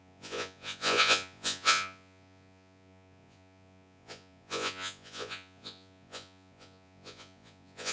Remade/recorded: remade